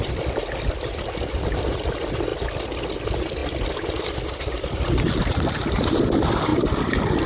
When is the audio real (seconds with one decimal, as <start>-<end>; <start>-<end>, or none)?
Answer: 0.0-7.3